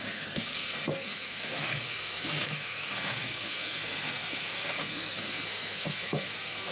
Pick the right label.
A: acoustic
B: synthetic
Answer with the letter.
B